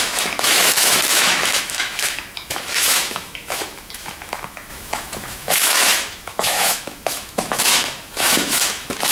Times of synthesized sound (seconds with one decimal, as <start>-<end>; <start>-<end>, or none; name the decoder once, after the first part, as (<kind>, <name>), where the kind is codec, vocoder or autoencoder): 0.0-9.1 (autoencoder, DAC-VAE)